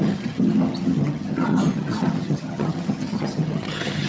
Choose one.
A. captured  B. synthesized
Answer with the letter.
B